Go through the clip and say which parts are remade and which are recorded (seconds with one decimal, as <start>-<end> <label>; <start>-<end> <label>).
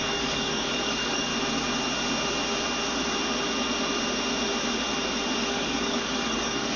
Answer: 0.0-1.3 remade; 1.3-5.4 recorded; 5.4-6.8 remade